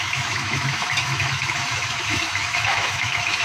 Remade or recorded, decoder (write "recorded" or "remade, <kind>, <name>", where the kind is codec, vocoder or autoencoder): remade, autoencoder, DAC-VAE